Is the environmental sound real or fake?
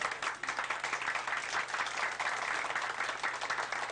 real